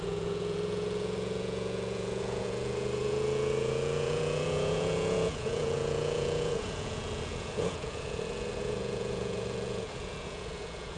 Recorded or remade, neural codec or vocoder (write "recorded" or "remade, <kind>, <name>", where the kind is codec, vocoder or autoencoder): remade, vocoder, Vocos